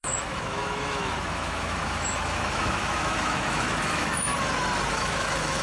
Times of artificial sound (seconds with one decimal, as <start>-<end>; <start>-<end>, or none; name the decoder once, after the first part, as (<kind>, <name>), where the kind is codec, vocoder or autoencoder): 0.0-4.3 (autoencoder, DAC-VAE); 4.9-5.6